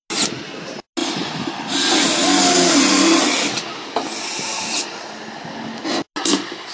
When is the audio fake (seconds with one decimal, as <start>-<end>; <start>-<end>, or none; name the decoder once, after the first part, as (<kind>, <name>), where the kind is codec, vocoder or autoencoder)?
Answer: none

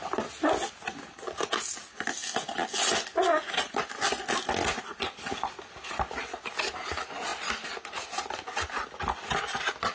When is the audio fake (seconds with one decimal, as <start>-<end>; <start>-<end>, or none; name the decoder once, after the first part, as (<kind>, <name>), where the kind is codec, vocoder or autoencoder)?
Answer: none

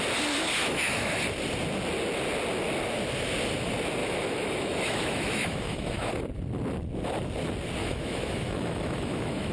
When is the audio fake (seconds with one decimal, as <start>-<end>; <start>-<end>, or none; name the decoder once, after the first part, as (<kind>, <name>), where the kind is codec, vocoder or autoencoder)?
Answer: 0.6-1.2 (autoencoder, DAC-VAE); 4.0-6.1; 7.8-9.5

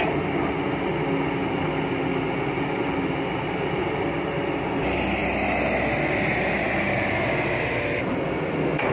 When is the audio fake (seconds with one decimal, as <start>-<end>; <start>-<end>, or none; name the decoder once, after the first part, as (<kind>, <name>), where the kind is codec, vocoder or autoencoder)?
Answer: none

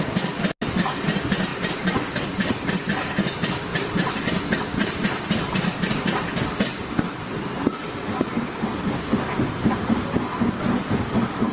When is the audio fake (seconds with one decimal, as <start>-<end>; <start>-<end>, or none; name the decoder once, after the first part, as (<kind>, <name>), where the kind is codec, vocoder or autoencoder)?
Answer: 1.5-2.7 (vocoder, BigVGAN v2); 3.7-5.2

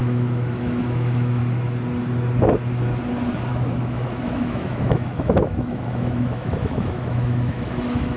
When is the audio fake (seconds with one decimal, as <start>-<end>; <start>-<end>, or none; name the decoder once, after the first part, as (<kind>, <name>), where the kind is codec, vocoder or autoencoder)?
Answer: 0.0-1.4 (autoencoder, DAC-VAE); 3.5-8.2